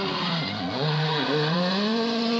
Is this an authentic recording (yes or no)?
no